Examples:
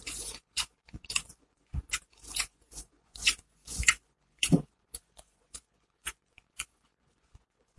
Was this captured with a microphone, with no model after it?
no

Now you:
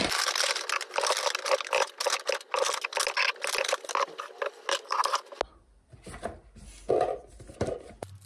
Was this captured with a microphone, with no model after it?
yes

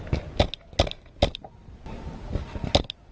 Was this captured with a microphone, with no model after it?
yes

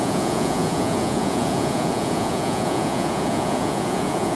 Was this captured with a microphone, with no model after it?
no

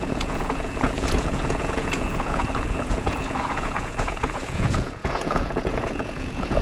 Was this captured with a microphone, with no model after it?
no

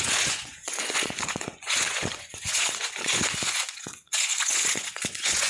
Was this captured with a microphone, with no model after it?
no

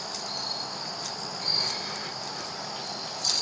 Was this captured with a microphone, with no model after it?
yes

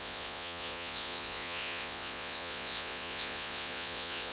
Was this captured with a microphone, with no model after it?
no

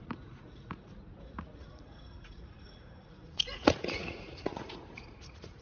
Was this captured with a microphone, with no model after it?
no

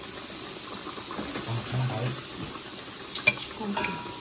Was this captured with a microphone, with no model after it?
yes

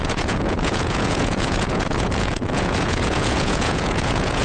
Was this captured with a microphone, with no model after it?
no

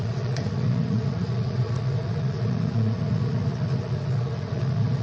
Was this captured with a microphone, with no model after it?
no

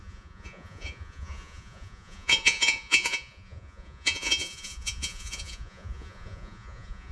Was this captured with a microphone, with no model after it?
no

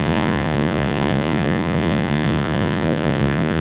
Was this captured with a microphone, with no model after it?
no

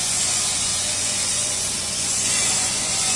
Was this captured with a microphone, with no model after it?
no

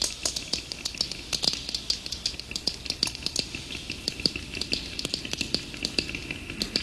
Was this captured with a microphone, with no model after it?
yes